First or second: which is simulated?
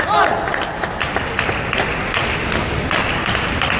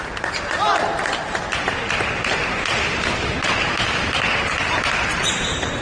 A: second